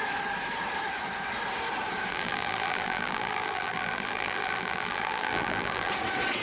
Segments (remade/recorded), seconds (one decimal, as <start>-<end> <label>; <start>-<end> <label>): 0.0-2.1 recorded; 2.1-5.9 remade; 5.9-6.4 recorded